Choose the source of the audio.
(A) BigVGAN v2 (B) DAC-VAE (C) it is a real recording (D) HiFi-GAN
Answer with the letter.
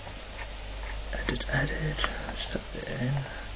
C